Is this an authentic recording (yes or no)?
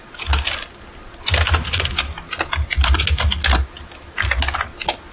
yes